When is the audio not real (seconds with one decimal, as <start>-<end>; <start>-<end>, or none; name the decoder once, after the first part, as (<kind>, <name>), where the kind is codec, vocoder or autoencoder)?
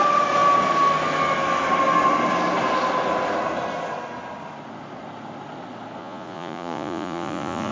6.0-7.7 (vocoder, Vocos)